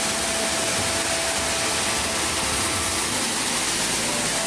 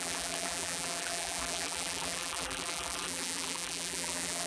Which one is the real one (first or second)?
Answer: first